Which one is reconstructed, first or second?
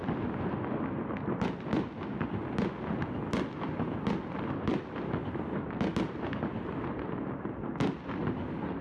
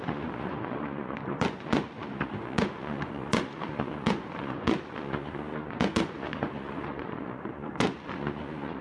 second